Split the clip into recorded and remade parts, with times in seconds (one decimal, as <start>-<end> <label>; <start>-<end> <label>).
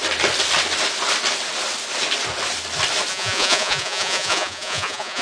0.0-3.1 recorded; 3.1-5.2 remade